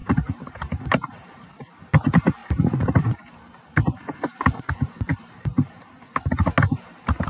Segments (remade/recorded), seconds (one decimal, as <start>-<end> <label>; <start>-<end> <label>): 0.0-1.6 remade; 1.6-2.4 recorded; 2.4-4.6 remade; 4.6-5.1 recorded; 5.1-6.0 remade; 6.0-7.3 recorded